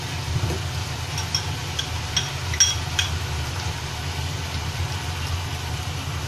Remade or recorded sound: recorded